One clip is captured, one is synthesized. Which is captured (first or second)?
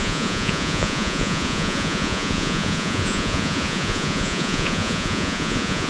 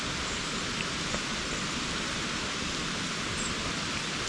second